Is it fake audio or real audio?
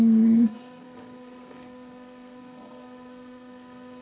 fake